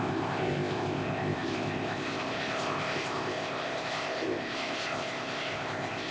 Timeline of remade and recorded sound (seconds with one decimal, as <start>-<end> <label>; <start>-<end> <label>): 0.0-6.1 remade